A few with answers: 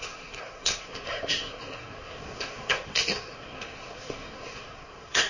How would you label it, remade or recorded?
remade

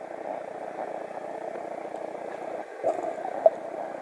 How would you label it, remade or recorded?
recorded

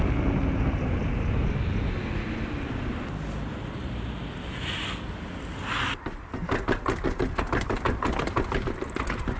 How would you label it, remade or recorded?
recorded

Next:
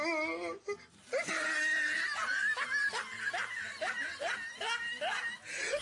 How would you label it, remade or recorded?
recorded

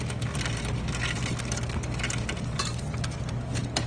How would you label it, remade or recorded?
recorded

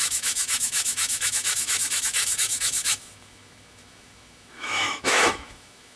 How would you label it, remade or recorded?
remade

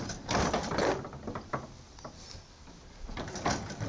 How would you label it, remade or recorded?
recorded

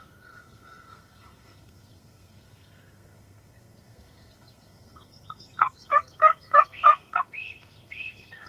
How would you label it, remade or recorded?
remade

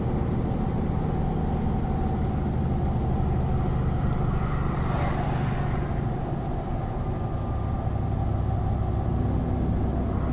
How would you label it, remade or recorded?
recorded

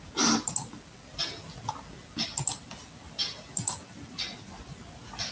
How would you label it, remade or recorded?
recorded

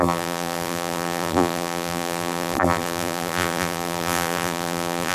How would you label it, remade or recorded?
remade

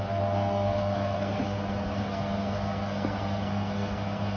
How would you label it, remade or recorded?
remade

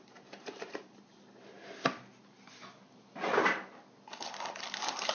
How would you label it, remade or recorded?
recorded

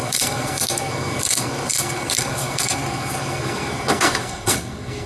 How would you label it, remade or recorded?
remade